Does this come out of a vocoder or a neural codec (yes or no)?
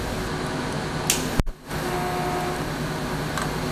no